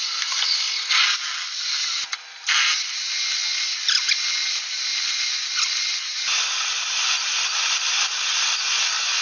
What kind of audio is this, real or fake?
real